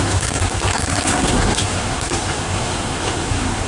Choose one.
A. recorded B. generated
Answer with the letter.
B